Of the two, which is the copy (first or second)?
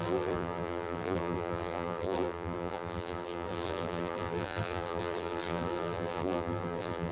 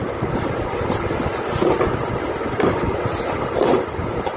first